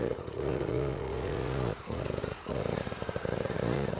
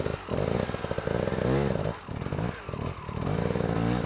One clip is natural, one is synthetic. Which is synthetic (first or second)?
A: first